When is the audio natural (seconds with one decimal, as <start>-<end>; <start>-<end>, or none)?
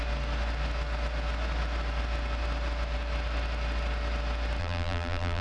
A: 0.0-4.6